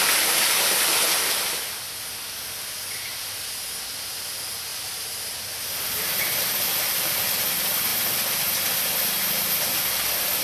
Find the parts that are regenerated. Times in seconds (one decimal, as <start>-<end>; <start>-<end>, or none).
4.7-6.5